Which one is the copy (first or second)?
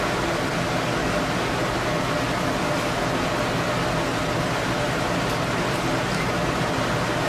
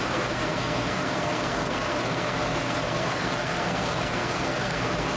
second